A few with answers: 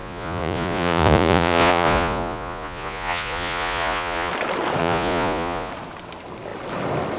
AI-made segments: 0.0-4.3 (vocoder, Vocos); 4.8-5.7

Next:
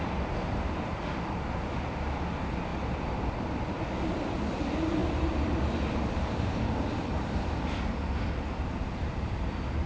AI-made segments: none

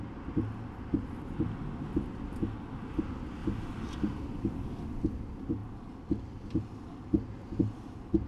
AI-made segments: 3.4-4.2 (vocoder, BigVGAN v2); 5.6-7.9

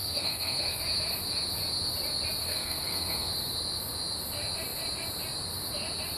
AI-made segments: 0.0-0.8 (codec, SNAC); 2.4-3.3